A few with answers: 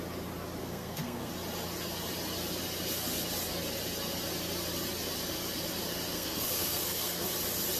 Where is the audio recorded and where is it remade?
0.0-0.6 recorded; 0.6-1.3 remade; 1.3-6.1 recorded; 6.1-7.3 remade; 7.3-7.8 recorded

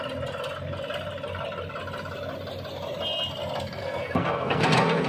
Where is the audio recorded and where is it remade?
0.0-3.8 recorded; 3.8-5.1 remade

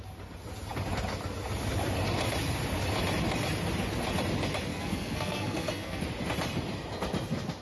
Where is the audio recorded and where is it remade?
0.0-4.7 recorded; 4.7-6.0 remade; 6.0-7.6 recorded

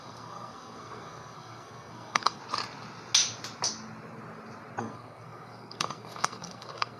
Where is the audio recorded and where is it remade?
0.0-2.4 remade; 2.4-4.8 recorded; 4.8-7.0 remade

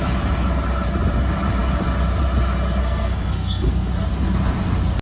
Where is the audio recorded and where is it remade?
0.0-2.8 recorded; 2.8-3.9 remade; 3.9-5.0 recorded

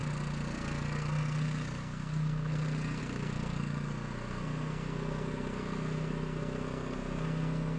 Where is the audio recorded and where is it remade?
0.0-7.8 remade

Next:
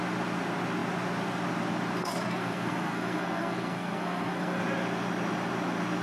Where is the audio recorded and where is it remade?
0.0-2.0 recorded; 2.0-4.6 remade; 4.6-6.0 recorded

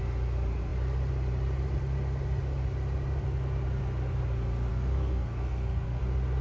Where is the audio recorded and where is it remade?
0.0-4.7 recorded; 4.7-6.0 remade; 6.0-6.4 recorded